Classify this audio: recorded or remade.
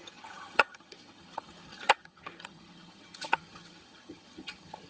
remade